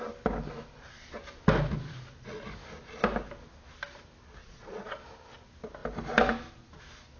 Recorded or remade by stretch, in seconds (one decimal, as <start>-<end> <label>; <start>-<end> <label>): 0.0-4.4 recorded; 4.4-5.0 remade; 5.0-7.2 recorded